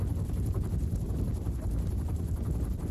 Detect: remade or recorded recorded